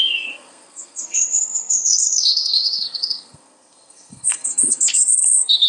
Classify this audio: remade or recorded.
remade